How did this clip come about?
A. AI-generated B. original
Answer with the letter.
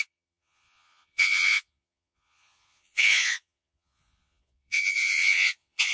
A